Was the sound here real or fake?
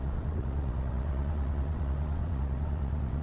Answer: fake